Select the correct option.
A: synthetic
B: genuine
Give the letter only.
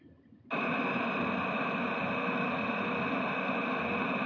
B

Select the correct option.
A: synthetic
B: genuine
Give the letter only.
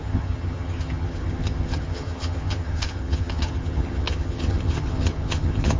A